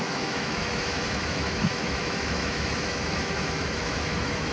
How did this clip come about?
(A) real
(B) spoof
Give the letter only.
B